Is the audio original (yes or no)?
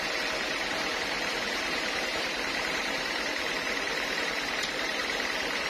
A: no